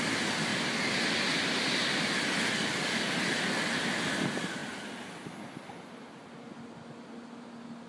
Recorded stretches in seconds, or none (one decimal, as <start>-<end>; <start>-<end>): 0.0-7.9